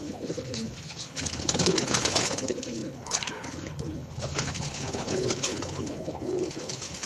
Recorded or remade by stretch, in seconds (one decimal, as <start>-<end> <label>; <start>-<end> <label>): 0.0-7.1 remade